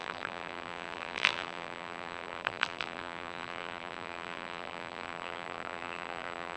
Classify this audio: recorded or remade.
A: remade